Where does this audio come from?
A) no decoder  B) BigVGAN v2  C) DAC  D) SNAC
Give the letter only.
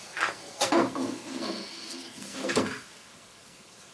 D